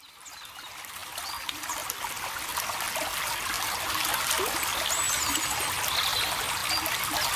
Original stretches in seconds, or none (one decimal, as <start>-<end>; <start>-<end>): 0.0-7.4